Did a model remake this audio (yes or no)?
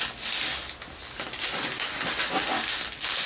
no